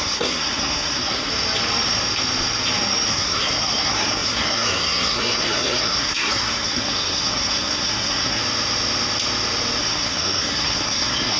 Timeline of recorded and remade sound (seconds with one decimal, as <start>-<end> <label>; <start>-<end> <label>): 0.0-1.3 remade; 1.3-3.1 recorded; 3.1-8.4 remade; 8.4-9.8 recorded; 9.8-11.4 remade